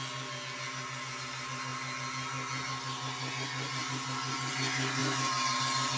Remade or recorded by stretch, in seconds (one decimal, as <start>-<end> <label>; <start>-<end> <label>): 0.0-6.0 recorded